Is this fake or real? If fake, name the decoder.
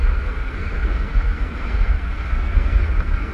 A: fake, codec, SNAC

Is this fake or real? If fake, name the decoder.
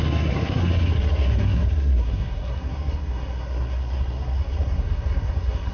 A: fake, codec, SNAC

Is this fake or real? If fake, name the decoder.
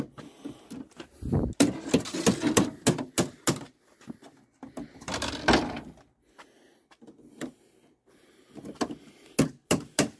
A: real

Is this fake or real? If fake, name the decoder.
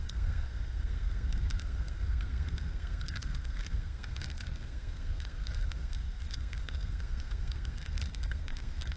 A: fake, codec, SNAC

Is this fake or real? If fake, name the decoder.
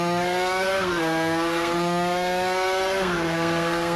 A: fake, codec, SNAC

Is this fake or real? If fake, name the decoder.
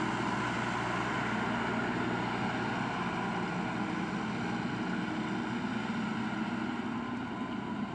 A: real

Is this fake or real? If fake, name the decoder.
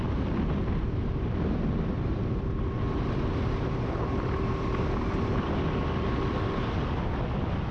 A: real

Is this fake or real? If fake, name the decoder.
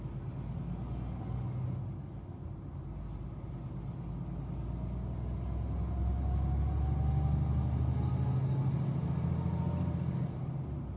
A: real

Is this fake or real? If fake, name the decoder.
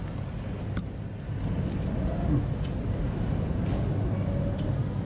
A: real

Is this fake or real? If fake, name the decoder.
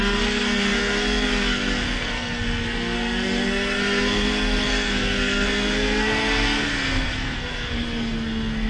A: fake, codec, SNAC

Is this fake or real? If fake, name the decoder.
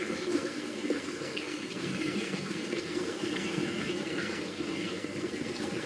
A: fake, codec, SNAC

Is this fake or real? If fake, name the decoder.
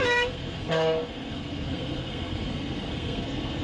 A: fake, codec, SNAC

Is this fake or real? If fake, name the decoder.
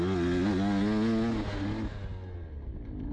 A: real